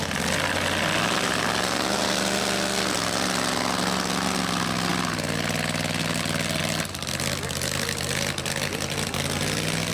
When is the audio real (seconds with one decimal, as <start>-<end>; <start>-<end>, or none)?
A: 0.0-9.9